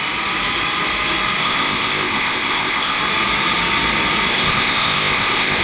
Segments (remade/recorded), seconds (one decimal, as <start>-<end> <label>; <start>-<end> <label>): 0.0-1.4 recorded; 1.4-3.0 remade; 3.0-4.3 recorded; 4.3-5.6 remade